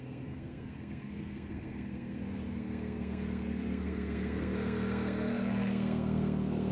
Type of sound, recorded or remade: remade